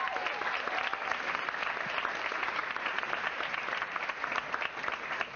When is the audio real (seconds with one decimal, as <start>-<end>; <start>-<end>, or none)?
0.0-2.6; 4.3-5.4